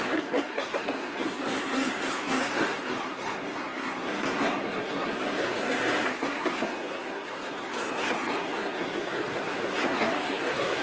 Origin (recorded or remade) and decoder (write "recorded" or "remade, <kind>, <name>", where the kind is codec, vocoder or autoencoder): remade, codec, SNAC